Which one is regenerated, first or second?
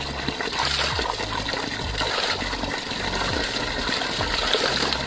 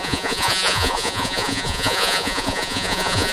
second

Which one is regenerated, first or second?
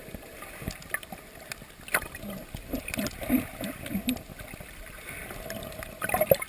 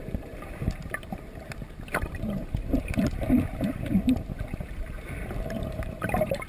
second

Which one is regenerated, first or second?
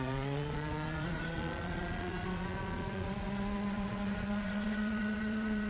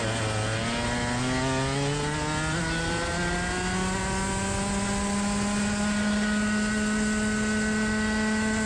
first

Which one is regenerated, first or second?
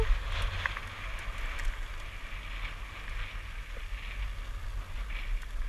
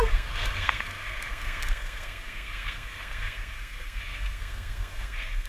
second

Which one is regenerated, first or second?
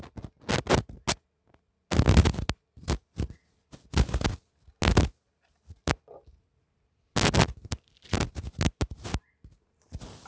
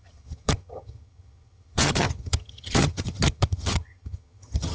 second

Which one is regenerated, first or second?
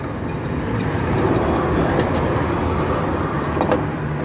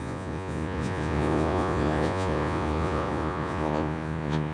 second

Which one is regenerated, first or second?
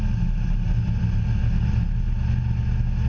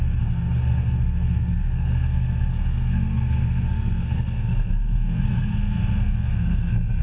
second